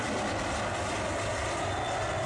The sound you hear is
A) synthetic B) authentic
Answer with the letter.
B